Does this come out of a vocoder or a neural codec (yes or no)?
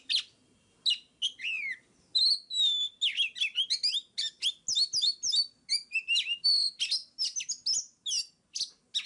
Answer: no